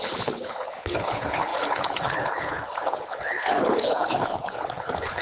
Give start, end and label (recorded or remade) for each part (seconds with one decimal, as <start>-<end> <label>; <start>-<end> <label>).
0.0-5.2 remade